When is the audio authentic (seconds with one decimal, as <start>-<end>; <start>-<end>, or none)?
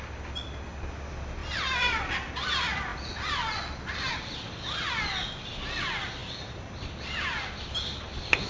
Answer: 0.0-1.4; 2.5-6.2; 7.5-8.5